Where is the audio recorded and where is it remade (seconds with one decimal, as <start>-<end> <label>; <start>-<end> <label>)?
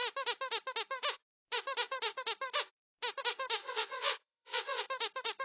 0.0-3.6 recorded; 3.6-4.8 remade; 4.8-5.4 recorded